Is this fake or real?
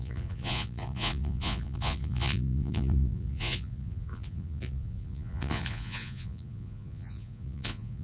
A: fake